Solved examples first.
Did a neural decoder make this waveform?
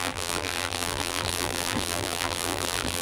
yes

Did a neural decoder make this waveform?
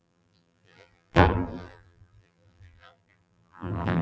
yes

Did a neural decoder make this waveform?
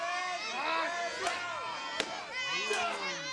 no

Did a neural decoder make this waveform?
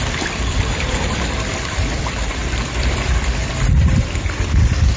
yes